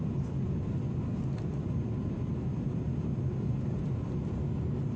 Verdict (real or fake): real